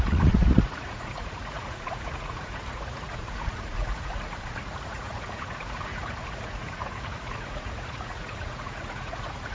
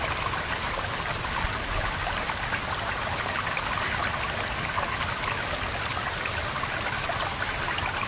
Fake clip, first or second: first